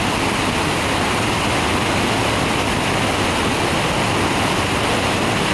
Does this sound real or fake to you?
real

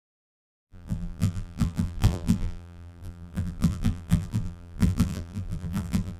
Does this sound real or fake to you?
fake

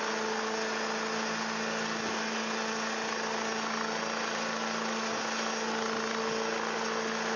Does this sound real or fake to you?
real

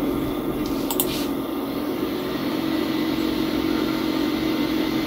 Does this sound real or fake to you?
real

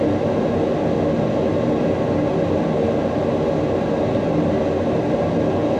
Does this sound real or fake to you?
real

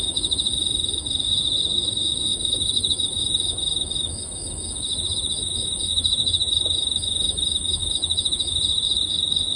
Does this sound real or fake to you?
fake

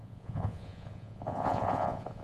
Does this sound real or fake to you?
fake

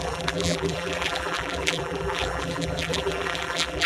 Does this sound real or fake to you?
fake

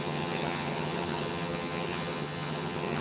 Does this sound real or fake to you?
fake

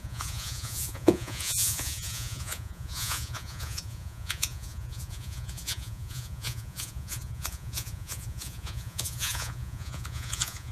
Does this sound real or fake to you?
fake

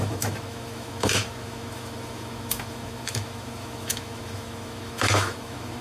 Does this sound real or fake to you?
fake